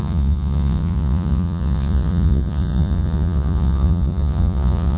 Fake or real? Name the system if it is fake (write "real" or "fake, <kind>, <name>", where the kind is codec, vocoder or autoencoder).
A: fake, vocoder, Vocos